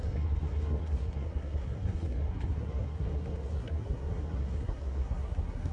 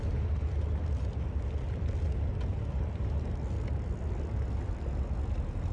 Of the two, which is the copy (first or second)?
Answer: first